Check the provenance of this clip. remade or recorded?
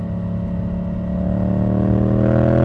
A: recorded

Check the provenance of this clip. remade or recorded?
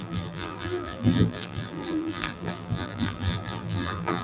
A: remade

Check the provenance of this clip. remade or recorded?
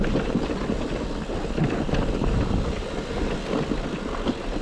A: recorded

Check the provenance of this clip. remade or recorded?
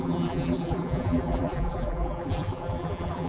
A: remade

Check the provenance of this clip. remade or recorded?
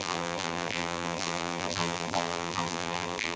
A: remade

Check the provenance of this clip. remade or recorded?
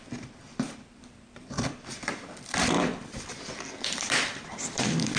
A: remade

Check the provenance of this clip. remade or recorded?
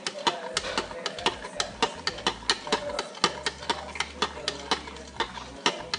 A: recorded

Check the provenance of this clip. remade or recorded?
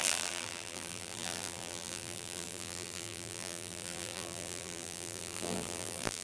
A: remade